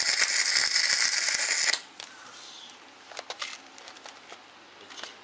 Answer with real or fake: real